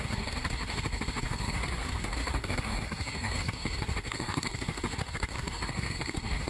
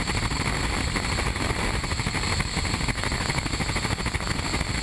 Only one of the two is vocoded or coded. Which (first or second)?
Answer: first